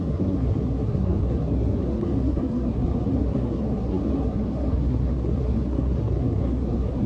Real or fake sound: fake